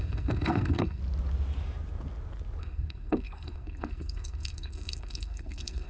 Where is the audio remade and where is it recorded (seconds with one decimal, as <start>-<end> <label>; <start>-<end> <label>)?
0.0-1.0 remade; 1.0-2.6 recorded; 2.6-5.9 remade

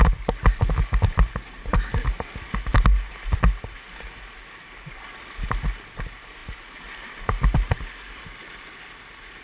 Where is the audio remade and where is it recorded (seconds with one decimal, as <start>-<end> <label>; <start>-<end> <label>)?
0.0-9.4 recorded

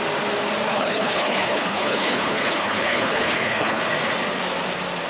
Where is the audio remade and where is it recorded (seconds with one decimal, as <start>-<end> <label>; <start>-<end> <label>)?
0.0-0.7 recorded; 0.7-3.8 remade; 3.8-5.1 recorded

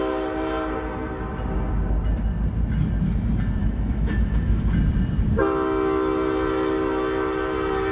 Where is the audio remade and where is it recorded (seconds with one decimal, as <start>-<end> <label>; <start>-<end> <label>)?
0.0-3.6 recorded; 3.6-4.6 remade; 4.6-7.9 recorded